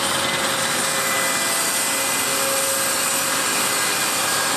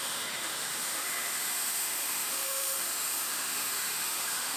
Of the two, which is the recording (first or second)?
first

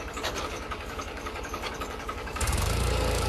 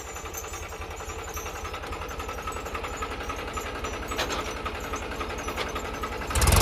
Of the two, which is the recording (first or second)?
second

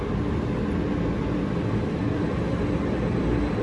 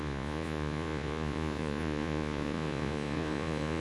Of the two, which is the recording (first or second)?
first